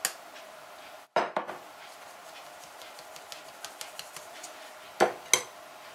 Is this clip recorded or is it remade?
recorded